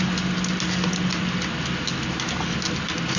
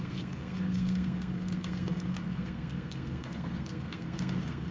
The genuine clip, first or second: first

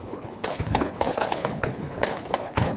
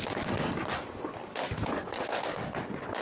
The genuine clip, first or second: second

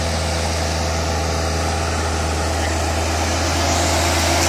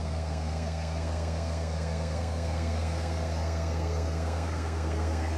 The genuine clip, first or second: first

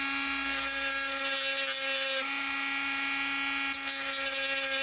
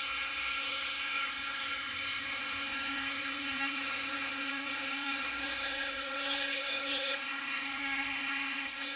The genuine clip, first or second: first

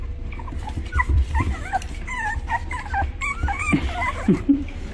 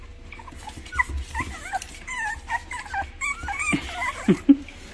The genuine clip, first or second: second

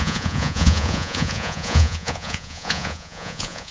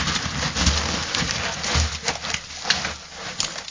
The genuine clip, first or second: second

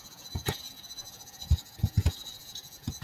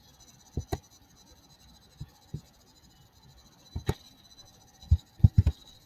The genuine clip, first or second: second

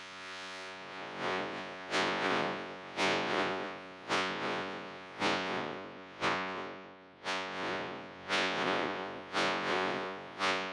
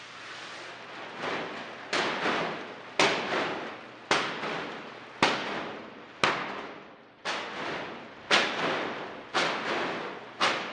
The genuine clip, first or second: second